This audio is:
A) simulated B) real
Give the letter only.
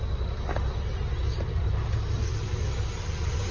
B